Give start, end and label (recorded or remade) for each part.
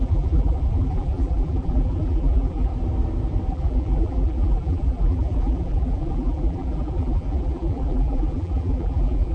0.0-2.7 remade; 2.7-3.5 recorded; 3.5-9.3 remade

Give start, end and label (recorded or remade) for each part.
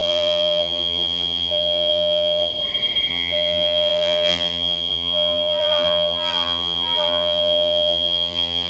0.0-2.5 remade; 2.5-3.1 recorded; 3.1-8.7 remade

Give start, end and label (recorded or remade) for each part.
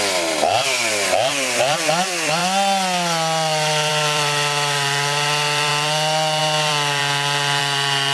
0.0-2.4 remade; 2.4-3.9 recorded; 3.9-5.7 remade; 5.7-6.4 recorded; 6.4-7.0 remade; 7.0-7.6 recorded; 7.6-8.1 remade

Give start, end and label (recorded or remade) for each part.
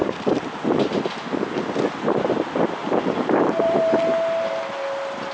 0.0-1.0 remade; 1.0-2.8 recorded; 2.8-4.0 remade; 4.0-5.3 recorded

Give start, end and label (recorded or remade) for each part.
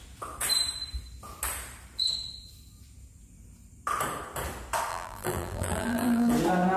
0.0-4.9 recorded; 4.9-6.3 remade; 6.3-6.8 recorded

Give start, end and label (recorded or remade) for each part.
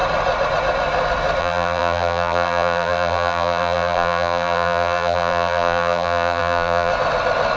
0.0-1.4 recorded; 1.4-6.9 remade; 6.9-7.6 recorded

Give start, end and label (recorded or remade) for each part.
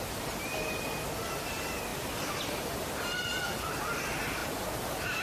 0.0-1.9 recorded; 1.9-3.7 remade; 3.7-5.2 recorded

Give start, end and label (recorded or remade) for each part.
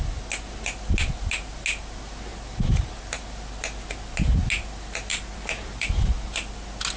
0.0-5.1 recorded; 5.1-5.8 remade; 5.8-7.0 recorded